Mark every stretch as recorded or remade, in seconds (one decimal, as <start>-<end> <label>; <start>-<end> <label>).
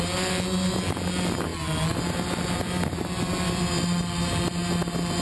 0.0-5.2 recorded